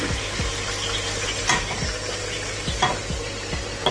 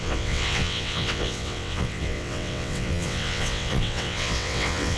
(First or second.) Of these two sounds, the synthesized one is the second